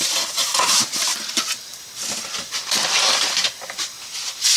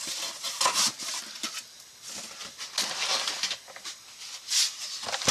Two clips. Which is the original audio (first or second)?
second